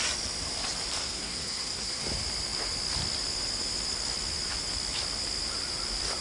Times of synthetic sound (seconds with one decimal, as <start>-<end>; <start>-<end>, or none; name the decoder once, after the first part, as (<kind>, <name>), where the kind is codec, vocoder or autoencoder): 1.0-2.0 (codec, SNAC)